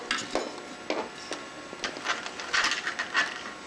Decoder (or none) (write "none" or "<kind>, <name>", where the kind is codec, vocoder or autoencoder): none